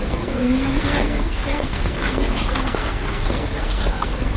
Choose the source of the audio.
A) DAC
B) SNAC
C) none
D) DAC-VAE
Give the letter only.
B